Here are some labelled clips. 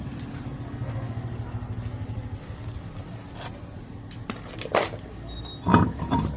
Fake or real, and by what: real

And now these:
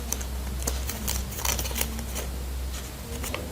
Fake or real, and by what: real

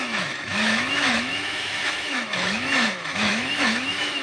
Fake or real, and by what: fake, autoencoder, DAC-VAE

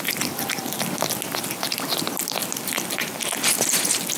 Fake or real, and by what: real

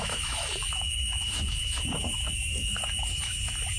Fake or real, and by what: fake, autoencoder, DAC-VAE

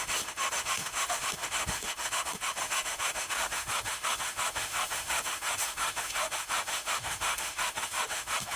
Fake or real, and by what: fake, autoencoder, DAC-VAE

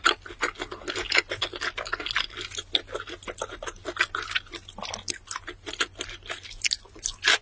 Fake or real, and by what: real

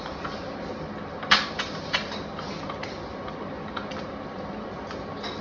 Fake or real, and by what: real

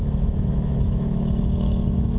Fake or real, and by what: fake, autoencoder, DAC-VAE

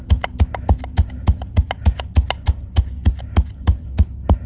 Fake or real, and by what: real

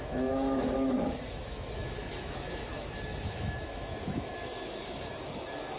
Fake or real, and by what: fake, autoencoder, DAC-VAE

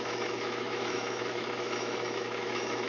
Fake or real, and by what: fake, autoencoder, DAC-VAE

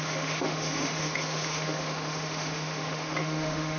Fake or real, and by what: fake, autoencoder, DAC-VAE